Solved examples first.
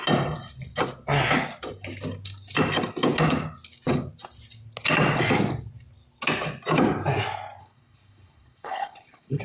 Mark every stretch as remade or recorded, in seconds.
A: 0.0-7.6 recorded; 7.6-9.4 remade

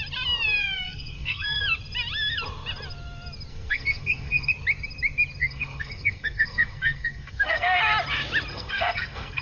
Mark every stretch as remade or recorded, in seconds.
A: 0.0-0.6 recorded; 0.6-1.6 remade; 1.6-3.5 recorded; 3.5-4.5 remade; 4.5-5.4 recorded; 5.4-7.8 remade; 7.8-8.5 recorded; 8.5-9.4 remade

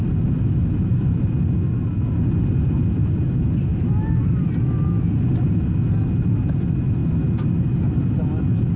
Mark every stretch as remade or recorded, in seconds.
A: 0.0-8.8 recorded